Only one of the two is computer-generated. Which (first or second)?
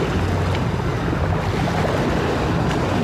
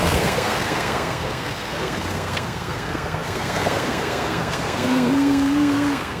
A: second